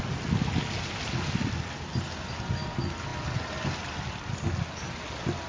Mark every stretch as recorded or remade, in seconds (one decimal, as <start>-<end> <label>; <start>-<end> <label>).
0.0-5.5 recorded